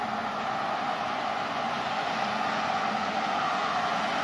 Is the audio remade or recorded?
remade